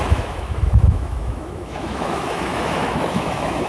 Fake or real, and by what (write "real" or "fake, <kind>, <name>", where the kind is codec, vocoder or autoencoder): fake, autoencoder, DAC-VAE